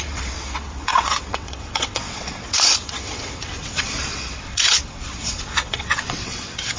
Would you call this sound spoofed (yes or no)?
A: yes